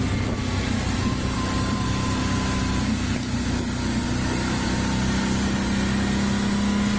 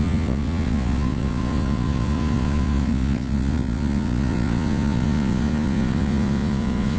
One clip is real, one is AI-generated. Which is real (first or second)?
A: first